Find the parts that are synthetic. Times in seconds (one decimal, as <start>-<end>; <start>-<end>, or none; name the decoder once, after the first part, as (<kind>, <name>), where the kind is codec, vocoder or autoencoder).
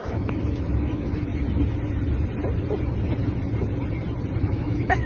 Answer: 0.0-1.3 (autoencoder, DAC-VAE); 4.4-5.1